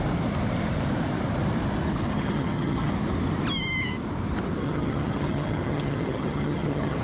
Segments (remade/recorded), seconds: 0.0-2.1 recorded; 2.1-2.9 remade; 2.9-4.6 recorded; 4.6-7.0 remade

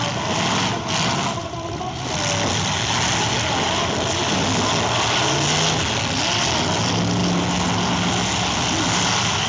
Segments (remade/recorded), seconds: 0.0-9.5 recorded

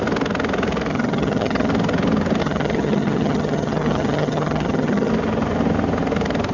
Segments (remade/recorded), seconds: 0.0-0.9 recorded; 0.9-1.7 remade; 1.7-2.4 recorded; 2.4-5.1 remade; 5.1-6.5 recorded

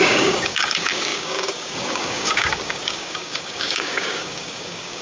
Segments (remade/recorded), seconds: 0.0-5.0 remade

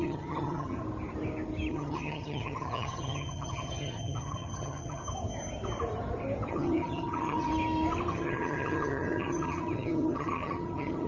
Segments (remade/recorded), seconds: 0.0-0.8 remade; 0.8-1.7 recorded; 1.7-5.0 remade; 5.0-6.5 recorded; 6.5-7.5 remade; 7.5-8.1 recorded; 8.1-11.1 remade